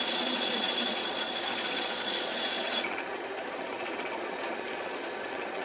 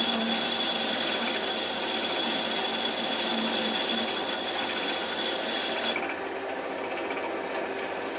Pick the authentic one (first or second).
second